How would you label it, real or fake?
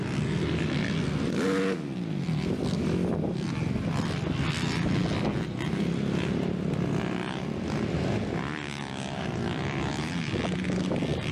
real